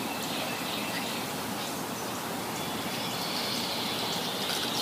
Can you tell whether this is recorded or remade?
recorded